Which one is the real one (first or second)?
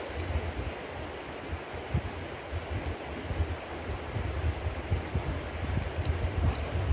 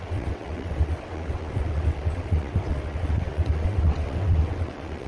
first